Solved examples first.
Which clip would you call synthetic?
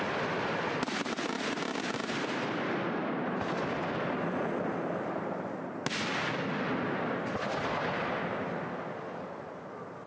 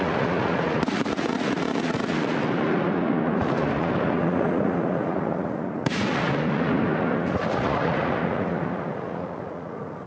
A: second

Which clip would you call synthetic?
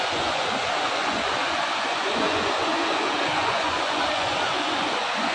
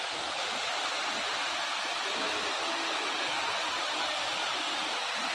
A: first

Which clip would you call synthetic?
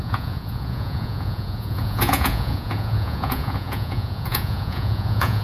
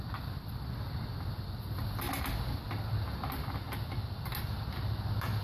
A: first